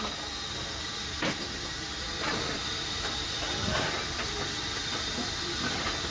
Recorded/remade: remade